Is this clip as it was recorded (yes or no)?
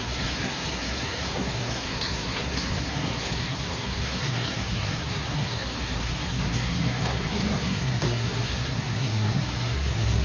no